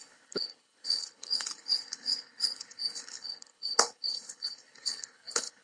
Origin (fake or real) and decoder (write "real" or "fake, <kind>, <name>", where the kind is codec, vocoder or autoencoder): fake, codec, HILCodec